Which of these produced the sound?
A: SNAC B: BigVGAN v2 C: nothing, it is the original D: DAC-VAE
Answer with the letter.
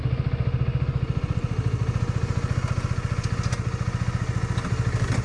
C